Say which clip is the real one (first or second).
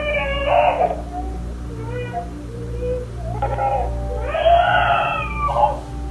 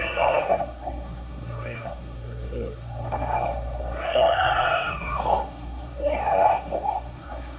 first